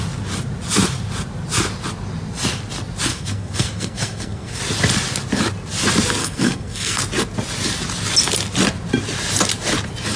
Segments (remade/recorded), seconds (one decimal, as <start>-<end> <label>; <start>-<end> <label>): 0.0-3.1 recorded; 3.1-4.6 remade; 4.6-6.2 recorded; 6.2-7.0 remade; 7.0-10.2 recorded